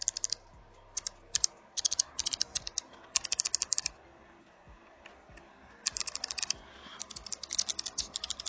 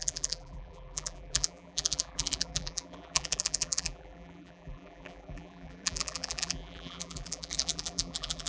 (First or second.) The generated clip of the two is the second